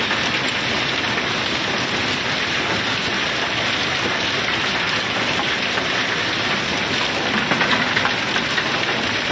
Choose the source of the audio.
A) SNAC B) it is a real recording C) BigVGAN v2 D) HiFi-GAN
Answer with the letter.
B